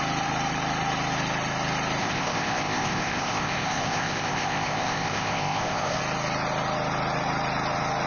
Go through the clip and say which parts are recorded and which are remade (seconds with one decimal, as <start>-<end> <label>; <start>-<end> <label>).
0.0-2.0 recorded; 2.0-6.0 remade; 6.0-8.1 recorded